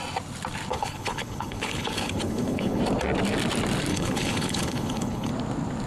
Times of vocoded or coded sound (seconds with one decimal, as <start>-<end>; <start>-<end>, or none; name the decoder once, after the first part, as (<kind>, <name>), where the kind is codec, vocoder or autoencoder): 0.7-2.8 (codec, HILCodec); 3.9-5.3